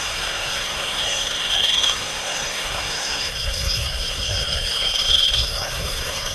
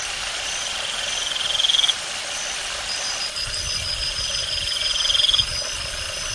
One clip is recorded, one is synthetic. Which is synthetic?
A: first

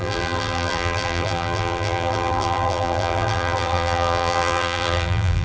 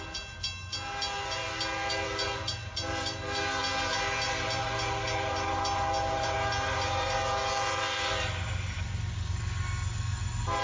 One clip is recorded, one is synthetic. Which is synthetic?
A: first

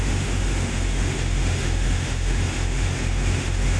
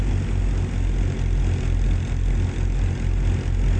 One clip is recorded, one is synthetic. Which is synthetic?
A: first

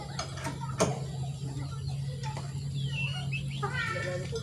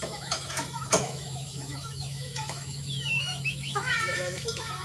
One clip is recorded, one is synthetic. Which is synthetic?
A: second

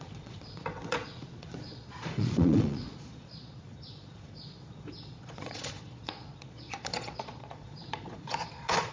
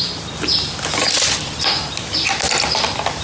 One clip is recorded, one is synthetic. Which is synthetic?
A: first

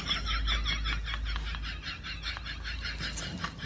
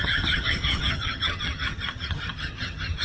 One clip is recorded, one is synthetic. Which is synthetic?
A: second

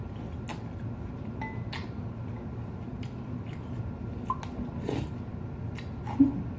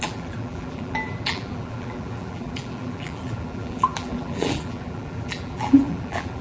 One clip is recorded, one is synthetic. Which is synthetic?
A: second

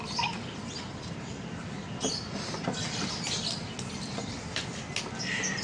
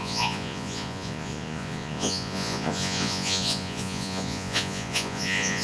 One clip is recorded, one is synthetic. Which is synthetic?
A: second